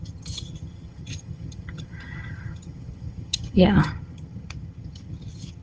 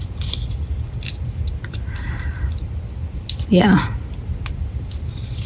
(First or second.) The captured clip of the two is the second